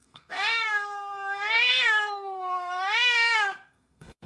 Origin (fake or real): fake